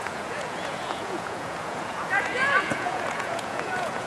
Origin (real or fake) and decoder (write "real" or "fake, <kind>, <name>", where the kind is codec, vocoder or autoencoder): fake, vocoder, Vocos